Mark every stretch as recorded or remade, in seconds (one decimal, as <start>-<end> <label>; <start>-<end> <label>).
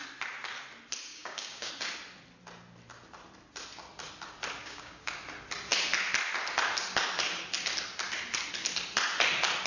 0.0-1.1 recorded; 1.1-1.7 remade; 1.7-4.6 recorded; 4.6-5.1 remade; 5.1-9.7 recorded